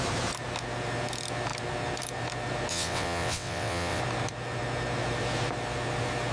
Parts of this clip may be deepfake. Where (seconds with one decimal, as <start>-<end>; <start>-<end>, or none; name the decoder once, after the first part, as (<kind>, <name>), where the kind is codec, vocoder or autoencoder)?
2.7-4.0 (vocoder, WaveNeXt)